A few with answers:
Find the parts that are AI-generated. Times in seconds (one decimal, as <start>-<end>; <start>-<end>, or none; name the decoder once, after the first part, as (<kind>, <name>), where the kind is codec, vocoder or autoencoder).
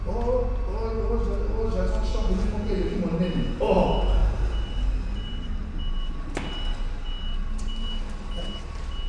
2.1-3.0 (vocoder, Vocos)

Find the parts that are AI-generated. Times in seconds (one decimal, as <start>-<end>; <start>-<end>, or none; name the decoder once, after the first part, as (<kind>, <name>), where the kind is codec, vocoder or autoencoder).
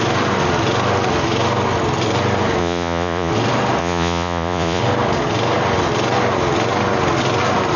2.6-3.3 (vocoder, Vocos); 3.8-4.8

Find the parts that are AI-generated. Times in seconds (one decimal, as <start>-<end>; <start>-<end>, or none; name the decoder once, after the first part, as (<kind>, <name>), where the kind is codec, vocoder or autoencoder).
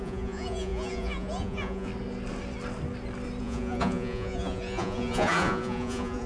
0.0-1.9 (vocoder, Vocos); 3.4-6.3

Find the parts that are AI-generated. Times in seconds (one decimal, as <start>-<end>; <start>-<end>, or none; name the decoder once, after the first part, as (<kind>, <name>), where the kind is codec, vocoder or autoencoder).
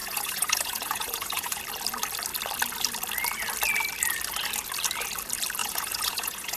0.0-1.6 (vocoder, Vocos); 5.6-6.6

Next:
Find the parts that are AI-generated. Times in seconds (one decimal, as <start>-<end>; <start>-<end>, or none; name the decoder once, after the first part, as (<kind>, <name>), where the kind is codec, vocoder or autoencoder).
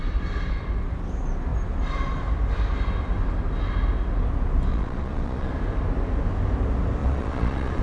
4.7-5.5 (vocoder, Vocos); 7.0-7.8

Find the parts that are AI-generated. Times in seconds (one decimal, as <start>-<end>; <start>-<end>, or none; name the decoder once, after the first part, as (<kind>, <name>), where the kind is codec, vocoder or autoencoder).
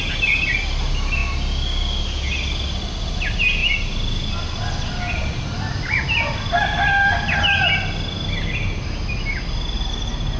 none